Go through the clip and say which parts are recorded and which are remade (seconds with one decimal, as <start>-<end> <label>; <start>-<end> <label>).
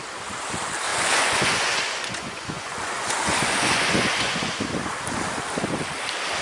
0.0-0.9 recorded; 0.9-4.6 remade; 4.6-6.4 recorded